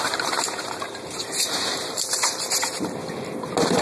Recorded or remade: remade